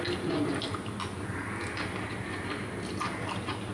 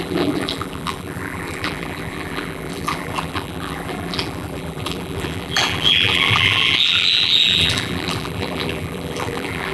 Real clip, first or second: first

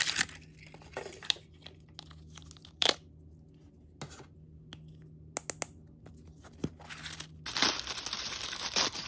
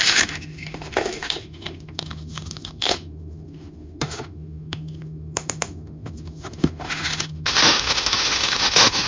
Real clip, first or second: first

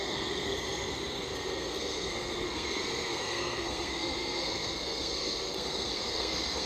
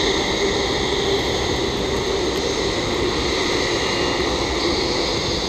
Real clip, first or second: second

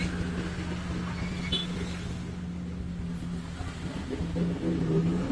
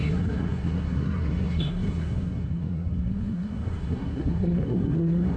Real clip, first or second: first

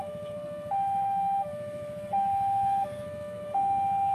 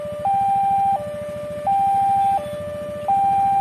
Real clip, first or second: second